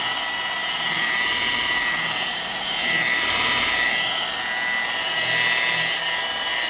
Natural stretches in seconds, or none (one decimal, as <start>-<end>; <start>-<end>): 0.0-0.6; 3.9-6.7